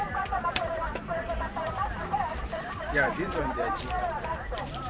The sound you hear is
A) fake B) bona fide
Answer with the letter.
A